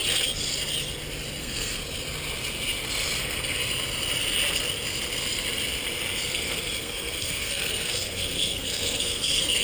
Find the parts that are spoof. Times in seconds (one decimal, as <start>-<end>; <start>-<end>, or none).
1.4-1.8; 3.2-3.6; 6.3-9.6